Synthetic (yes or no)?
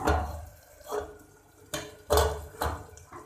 no